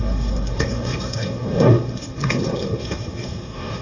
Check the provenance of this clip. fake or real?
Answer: fake